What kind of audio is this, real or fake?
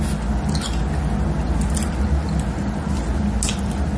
real